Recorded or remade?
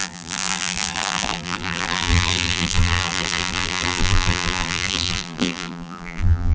remade